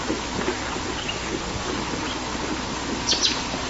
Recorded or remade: recorded